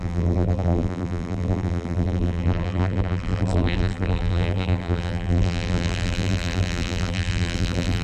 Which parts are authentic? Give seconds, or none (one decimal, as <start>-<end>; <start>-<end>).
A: none